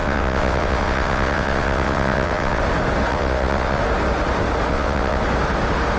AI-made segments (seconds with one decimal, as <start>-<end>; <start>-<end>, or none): 0.0-2.6; 3.1-3.8; 4.7-5.2